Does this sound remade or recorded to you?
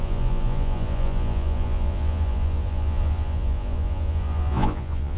remade